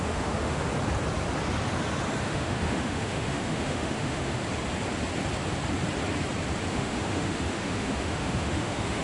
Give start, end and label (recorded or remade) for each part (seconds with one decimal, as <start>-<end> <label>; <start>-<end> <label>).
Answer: 0.0-0.7 remade; 0.7-2.2 recorded; 2.2-4.4 remade; 4.4-6.7 recorded; 6.7-9.0 remade